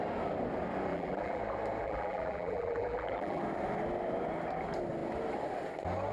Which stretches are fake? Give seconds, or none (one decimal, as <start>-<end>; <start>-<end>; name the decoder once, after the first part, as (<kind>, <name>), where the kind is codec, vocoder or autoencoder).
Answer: 0.9-1.4 (vocoder, BigVGAN v2); 1.8-3.4